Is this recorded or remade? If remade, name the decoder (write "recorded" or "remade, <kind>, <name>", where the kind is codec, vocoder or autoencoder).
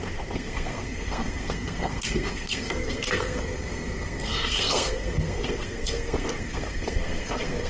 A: remade, codec, SNAC